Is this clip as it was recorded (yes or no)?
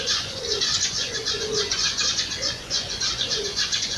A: no